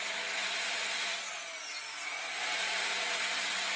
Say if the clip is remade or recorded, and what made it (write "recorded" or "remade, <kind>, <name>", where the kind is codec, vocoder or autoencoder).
recorded